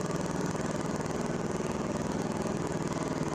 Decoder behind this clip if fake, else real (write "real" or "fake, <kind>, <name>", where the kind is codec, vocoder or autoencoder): real